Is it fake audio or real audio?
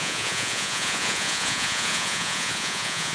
fake